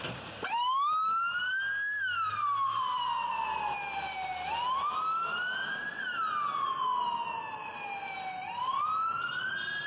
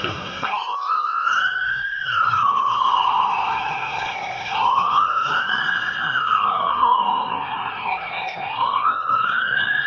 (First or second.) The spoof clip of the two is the second